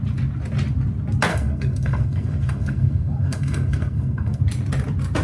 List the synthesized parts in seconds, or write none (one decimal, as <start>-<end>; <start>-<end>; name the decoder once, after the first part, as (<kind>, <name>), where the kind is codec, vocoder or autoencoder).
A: 1.3-4.4 (codec, SNAC)